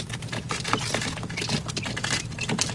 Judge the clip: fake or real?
fake